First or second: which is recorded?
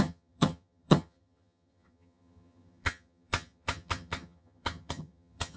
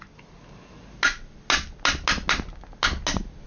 second